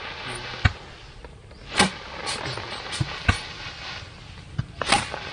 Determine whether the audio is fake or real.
real